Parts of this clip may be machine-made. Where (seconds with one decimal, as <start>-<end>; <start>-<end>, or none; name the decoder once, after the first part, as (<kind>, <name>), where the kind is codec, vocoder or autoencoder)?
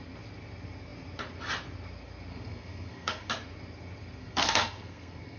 2.3-3.3 (codec, SNAC); 4.2-5.4